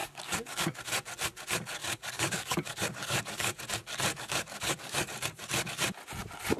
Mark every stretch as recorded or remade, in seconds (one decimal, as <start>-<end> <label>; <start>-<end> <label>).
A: 0.0-0.8 remade; 0.8-1.8 recorded; 1.8-3.6 remade; 3.6-4.1 recorded; 4.1-5.1 remade; 5.1-6.6 recorded